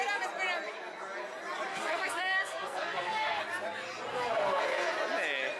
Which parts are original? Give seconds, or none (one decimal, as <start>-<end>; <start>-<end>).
0.0-1.7; 3.4-4.1; 4.9-5.6